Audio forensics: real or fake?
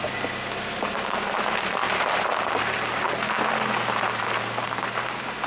real